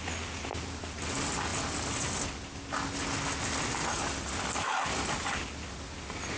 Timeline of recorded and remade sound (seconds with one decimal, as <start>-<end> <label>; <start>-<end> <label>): 0.0-6.4 recorded